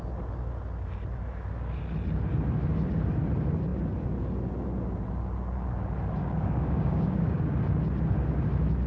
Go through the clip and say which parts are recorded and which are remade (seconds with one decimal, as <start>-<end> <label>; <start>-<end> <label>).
0.0-6.2 recorded; 6.2-7.4 remade; 7.4-8.9 recorded